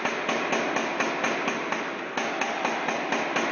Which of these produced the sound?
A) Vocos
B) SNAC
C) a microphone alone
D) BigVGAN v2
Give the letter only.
C